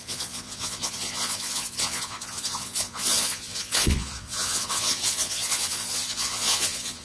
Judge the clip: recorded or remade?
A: remade